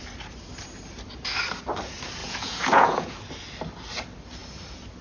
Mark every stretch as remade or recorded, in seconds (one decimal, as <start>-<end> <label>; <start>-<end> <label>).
0.0-2.2 recorded; 2.2-3.2 remade; 3.2-5.0 recorded